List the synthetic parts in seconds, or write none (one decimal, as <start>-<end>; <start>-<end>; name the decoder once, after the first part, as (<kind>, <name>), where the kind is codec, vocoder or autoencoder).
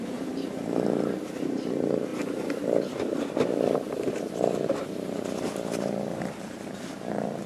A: 0.0-7.5 (vocoder, BigVGAN v2)